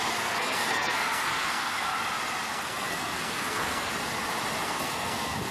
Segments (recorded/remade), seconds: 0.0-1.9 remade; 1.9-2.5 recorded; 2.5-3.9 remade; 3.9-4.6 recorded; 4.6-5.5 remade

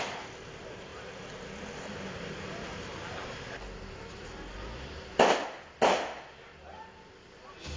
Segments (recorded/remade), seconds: 0.0-7.8 recorded

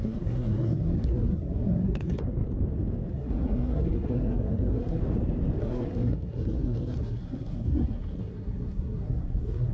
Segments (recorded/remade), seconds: 0.0-2.4 remade; 2.4-3.1 recorded; 3.1-5.0 remade; 5.0-5.6 recorded; 5.6-9.7 remade

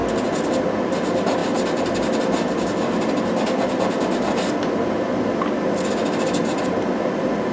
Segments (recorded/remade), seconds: 0.0-7.5 recorded

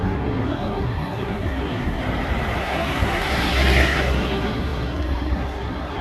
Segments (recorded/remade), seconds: 0.0-2.0 remade; 2.0-2.6 recorded; 2.6-6.0 remade

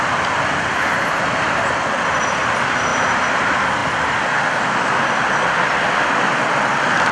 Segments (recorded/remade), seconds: 0.0-7.1 recorded

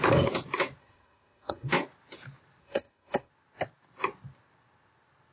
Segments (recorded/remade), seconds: 0.0-0.8 recorded; 0.8-1.7 remade; 1.7-2.6 recorded; 2.6-3.3 remade; 3.3-5.3 recorded

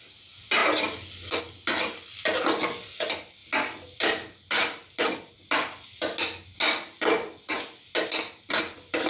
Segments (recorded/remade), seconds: 0.0-9.1 recorded